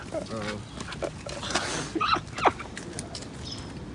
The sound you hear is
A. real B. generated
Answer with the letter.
A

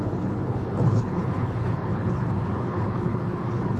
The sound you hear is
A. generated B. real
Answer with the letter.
A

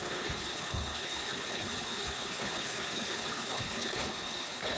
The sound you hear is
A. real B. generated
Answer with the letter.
B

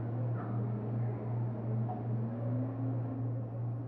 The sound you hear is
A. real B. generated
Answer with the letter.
A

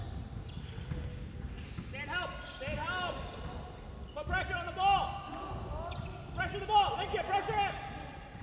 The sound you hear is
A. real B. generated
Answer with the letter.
A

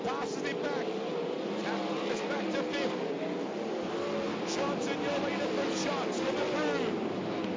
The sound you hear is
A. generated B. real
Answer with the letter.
B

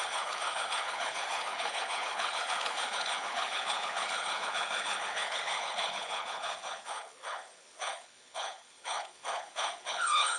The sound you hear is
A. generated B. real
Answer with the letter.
A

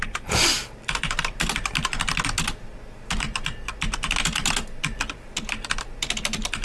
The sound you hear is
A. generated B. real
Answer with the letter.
B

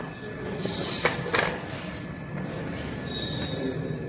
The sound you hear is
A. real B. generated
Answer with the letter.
A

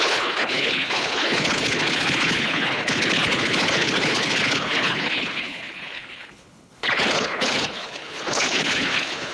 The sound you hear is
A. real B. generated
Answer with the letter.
B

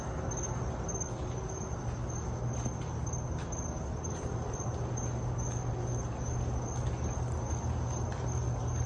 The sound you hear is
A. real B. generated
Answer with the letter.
A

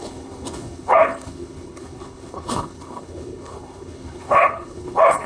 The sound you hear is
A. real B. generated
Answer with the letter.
B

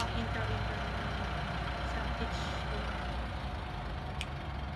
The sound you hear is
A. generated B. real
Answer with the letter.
B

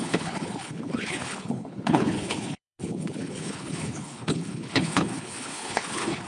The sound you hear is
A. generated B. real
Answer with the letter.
A